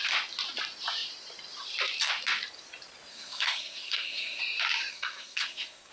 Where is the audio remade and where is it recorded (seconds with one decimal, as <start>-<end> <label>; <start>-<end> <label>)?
0.0-3.1 recorded; 3.1-4.4 remade; 4.4-4.9 recorded; 4.9-5.9 remade